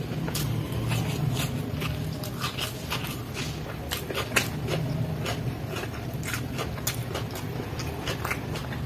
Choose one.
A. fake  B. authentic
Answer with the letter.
B